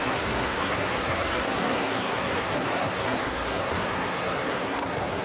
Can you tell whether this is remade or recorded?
remade